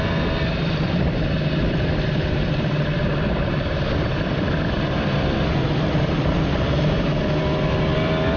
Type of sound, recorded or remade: remade